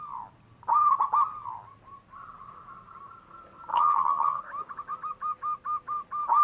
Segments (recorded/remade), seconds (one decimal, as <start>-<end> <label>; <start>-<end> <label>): 0.0-3.7 recorded; 3.7-4.4 remade; 4.4-6.4 recorded